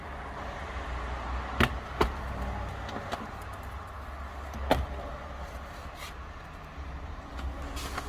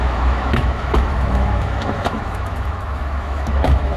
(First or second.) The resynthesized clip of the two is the second